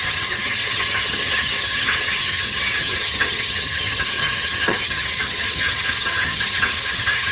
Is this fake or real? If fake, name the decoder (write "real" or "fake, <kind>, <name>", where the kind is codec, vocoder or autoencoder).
fake, vocoder, HiFi-GAN